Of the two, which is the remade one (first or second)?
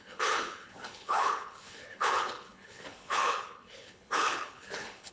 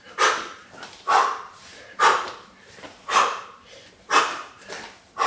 first